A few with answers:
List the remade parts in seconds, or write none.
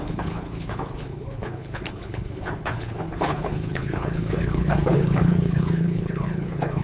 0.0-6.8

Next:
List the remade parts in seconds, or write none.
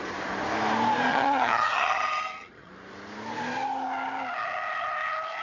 1.1-2.7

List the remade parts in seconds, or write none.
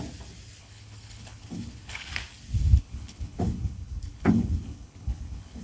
0.6-2.1; 2.6-5.6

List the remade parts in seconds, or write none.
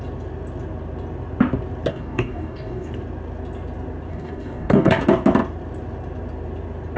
1.9-2.9; 4.1-5.0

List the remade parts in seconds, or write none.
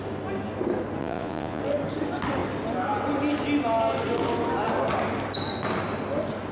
1.0-1.6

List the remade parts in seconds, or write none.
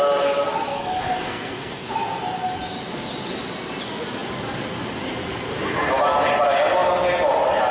0.7-1.9